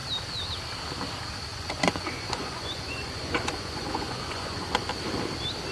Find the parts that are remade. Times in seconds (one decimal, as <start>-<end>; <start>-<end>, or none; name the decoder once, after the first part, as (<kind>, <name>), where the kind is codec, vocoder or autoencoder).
1.5-4.9 (vocoder, Vocos)